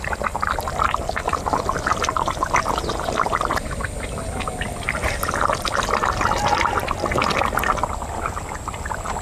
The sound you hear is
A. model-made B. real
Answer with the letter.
B